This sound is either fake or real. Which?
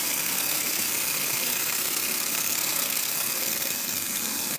fake